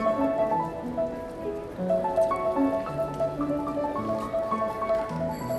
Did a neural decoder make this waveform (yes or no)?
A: no